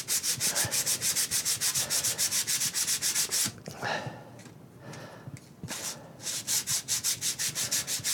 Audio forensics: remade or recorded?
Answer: recorded